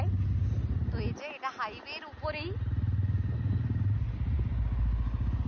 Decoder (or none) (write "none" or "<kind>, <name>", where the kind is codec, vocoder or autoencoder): none